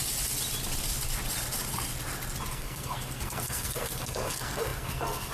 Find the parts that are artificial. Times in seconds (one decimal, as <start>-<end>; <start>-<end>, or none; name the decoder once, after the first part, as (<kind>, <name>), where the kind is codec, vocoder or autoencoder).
2.5-5.3 (codec, SNAC)